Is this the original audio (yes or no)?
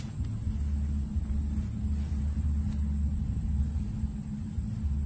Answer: yes